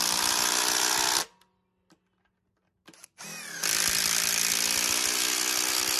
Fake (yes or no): no